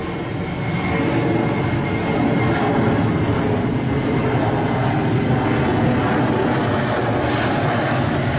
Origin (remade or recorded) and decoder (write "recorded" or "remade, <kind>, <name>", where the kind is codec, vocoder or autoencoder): recorded